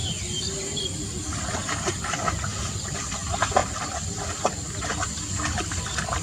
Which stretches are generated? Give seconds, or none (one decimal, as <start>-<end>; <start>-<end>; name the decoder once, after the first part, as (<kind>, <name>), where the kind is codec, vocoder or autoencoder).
none